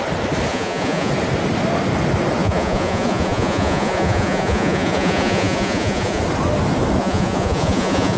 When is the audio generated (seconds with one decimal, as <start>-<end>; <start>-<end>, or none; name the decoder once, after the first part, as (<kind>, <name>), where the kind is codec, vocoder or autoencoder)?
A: 0.5-1.1 (vocoder, Vocos); 2.4-6.2; 7.0-8.2